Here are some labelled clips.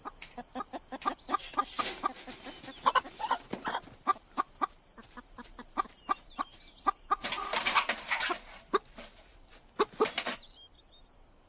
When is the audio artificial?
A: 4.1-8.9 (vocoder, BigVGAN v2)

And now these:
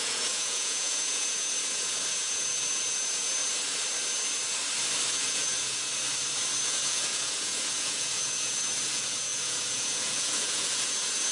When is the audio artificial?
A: 0.0-3.4 (vocoder, Vocos); 5.1-5.9; 6.6-11.3

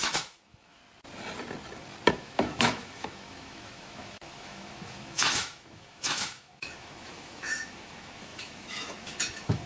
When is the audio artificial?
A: 0.0-0.8 (autoencoder, DAC-VAE); 2.1-9.7